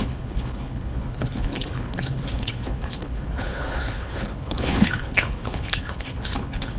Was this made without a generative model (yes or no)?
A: no